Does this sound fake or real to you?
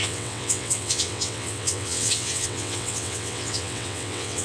fake